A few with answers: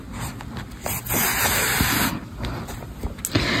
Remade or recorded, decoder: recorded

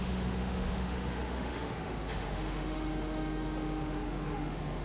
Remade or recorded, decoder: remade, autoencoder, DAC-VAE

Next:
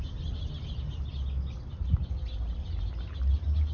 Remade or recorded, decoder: recorded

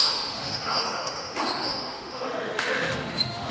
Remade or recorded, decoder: remade, autoencoder, DAC-VAE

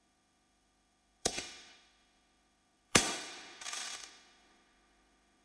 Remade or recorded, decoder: remade, autoencoder, DAC-VAE